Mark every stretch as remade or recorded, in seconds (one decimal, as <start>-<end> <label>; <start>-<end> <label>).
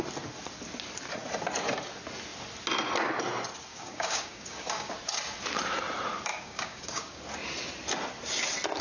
0.0-3.7 recorded; 3.7-4.9 remade; 4.9-6.3 recorded; 6.3-7.2 remade; 7.2-8.8 recorded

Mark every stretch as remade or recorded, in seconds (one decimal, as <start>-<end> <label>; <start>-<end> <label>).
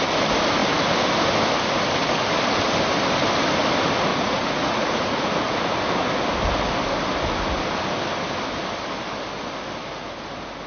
0.0-4.1 recorded; 4.1-5.6 remade; 5.6-10.7 recorded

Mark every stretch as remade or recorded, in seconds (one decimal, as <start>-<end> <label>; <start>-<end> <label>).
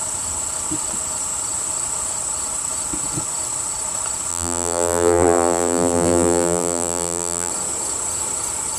0.0-4.3 recorded; 4.3-7.5 remade; 7.5-8.8 recorded